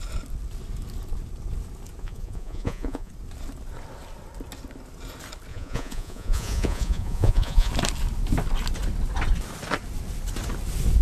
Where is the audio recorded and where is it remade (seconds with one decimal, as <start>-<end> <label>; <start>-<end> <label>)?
0.0-2.0 recorded; 2.0-3.1 remade; 3.1-5.5 recorded; 5.5-7.7 remade; 7.7-11.0 recorded